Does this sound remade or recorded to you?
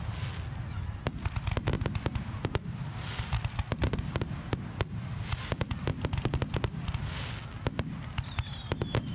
recorded